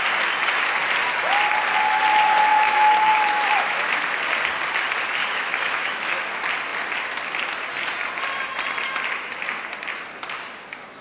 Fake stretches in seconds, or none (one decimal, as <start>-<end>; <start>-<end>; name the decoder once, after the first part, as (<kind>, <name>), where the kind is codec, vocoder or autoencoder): 2.5-4.2 (autoencoder, DAC-VAE); 5.2-6.2